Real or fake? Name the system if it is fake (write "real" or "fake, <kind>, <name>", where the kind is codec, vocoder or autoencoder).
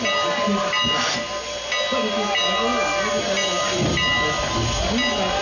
real